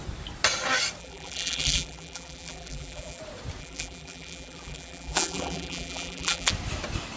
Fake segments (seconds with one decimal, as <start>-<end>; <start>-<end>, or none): 1.0-3.2; 3.6-6.5